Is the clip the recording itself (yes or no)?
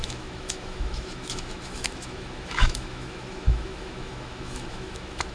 no